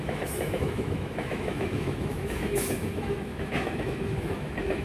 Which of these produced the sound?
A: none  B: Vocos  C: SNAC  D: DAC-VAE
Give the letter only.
D